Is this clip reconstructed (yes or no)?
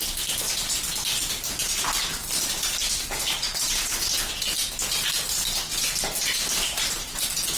no